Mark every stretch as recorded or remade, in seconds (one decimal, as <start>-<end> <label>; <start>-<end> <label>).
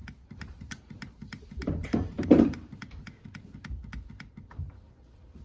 0.0-3.0 remade; 3.0-5.4 recorded